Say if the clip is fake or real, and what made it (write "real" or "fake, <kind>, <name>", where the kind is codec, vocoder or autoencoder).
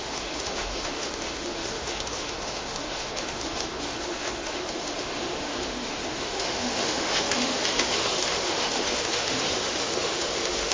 fake, autoencoder, DAC-VAE